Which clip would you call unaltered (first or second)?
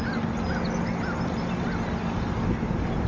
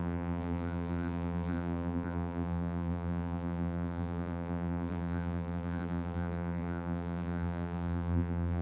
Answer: first